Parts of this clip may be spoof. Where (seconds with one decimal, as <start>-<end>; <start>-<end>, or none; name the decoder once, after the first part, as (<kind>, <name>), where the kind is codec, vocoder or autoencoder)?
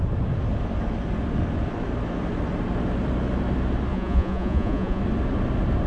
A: 3.9-5.0 (vocoder, Vocos)